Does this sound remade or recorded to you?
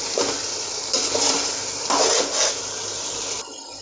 recorded